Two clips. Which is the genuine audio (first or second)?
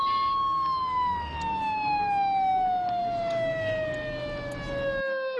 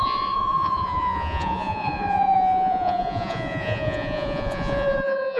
first